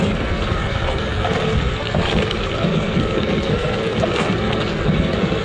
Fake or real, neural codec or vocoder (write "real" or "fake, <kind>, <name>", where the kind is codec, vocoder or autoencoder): fake, codec, SNAC